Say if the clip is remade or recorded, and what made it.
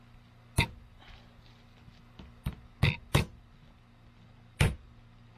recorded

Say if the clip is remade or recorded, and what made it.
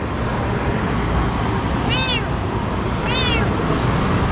recorded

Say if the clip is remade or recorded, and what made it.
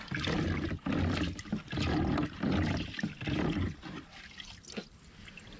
recorded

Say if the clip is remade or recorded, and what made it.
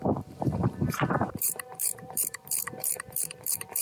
remade, vocoder, BigVGAN v2